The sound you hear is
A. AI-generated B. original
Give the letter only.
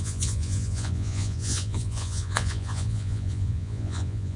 A